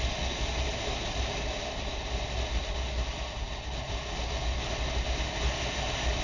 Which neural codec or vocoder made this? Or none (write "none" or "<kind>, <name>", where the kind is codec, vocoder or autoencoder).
none